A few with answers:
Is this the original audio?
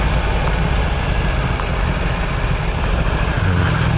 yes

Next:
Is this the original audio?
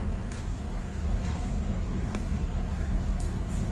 no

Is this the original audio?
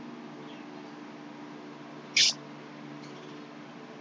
yes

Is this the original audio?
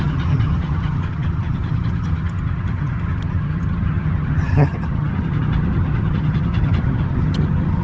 no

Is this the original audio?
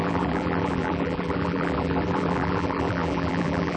no